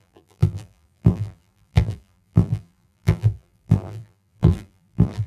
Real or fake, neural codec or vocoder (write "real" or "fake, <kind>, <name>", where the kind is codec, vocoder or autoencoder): fake, vocoder, BigVGAN v2